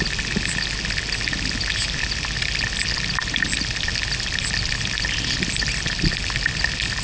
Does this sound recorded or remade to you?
recorded